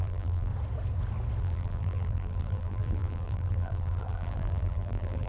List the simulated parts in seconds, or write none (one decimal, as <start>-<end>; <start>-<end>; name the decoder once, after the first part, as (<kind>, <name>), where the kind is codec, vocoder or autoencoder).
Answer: 0.0-0.5 (vocoder, BigVGAN v2); 1.4-5.3